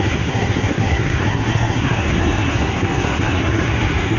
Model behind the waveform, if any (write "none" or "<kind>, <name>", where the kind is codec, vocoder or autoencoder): codec, SNAC